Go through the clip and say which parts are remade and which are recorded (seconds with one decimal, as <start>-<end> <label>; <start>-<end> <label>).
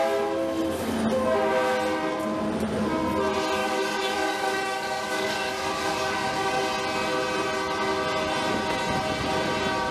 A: 0.0-3.6 recorded; 3.6-6.6 remade; 6.6-9.9 recorded